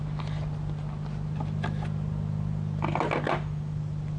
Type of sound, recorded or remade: recorded